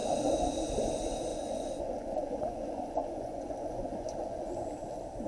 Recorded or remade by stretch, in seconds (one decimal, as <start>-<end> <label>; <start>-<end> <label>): 0.0-1.3 recorded; 1.3-4.5 remade; 4.5-5.3 recorded